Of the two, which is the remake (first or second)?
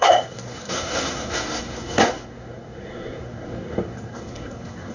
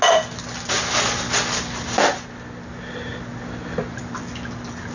first